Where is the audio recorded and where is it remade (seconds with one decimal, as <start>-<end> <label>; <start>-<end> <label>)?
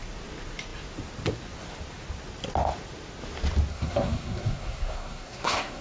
0.0-3.7 recorded; 3.7-5.8 remade